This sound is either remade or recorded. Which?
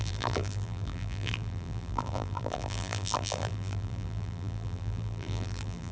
remade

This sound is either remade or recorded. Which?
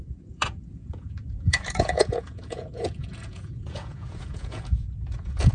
remade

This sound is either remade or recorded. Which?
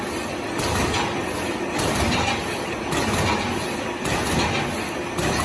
recorded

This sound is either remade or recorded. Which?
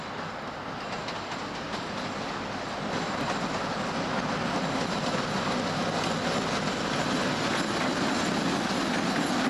recorded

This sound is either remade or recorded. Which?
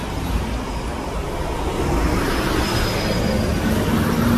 recorded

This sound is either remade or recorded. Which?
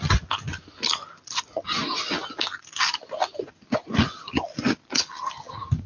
recorded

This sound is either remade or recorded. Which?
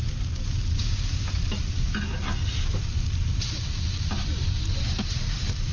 remade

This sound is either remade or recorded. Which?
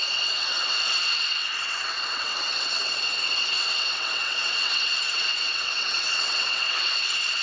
remade